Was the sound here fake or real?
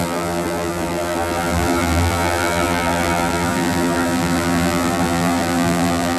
fake